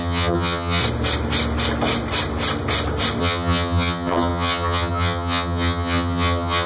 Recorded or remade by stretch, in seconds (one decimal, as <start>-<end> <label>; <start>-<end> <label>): 0.0-0.8 remade; 0.8-3.2 recorded; 3.2-6.7 remade